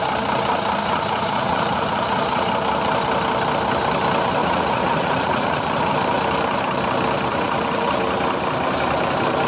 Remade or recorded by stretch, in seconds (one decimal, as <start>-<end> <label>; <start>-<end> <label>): 0.0-0.8 recorded; 0.8-2.5 remade; 2.5-4.4 recorded; 4.4-5.9 remade; 5.9-7.3 recorded; 7.3-7.9 remade; 7.9-9.5 recorded